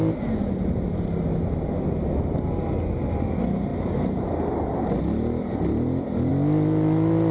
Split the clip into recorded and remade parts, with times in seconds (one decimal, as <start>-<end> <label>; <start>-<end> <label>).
0.0-7.3 recorded